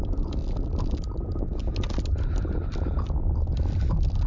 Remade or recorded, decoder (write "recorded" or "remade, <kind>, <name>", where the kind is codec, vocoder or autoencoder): recorded